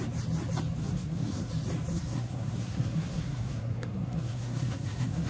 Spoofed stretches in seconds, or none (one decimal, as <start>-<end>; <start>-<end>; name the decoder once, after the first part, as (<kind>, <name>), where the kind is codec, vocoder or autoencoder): 0.8-1.5 (codec, SNAC); 1.9-5.3